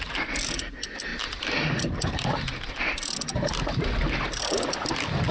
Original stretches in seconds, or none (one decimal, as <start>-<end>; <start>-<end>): 0.0-5.3